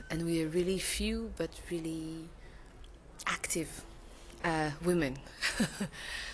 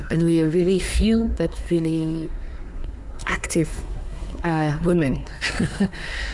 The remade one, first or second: second